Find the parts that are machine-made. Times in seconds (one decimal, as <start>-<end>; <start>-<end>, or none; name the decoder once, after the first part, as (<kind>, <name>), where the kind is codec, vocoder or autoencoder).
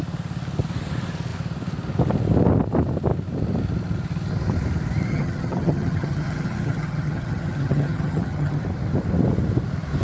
5.1-8.6 (vocoder, HiFi-GAN)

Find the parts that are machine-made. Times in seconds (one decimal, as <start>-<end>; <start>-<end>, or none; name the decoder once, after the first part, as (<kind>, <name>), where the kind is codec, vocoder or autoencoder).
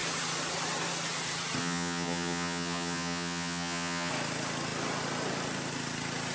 1.6-4.1 (vocoder, HiFi-GAN)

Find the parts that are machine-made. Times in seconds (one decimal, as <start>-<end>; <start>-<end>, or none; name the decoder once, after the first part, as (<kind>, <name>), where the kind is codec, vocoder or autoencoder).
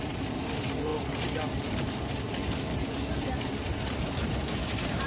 none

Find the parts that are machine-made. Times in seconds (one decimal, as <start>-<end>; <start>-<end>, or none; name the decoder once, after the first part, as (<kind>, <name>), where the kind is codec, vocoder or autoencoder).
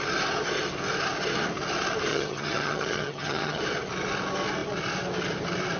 2.1-3.6 (vocoder, HiFi-GAN)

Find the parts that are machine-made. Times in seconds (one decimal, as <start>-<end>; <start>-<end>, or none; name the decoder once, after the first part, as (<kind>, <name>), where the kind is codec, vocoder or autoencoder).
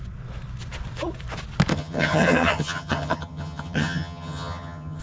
1.7-5.0 (vocoder, HiFi-GAN)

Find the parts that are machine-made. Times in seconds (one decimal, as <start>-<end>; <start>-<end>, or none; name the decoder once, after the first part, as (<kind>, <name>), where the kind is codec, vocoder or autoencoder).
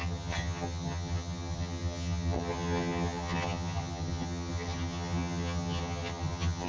0.0-6.7 (vocoder, HiFi-GAN)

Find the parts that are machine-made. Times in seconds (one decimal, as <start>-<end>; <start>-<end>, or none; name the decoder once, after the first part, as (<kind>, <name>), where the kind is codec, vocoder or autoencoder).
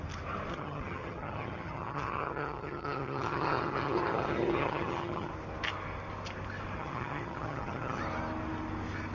0.5-5.3 (vocoder, HiFi-GAN); 6.8-8.0